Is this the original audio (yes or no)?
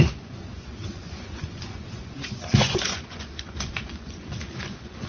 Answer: no